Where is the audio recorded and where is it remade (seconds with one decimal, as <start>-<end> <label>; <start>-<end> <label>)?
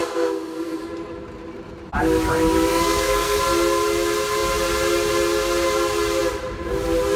0.0-0.8 remade; 0.8-2.7 recorded; 2.7-3.4 remade; 3.4-7.2 recorded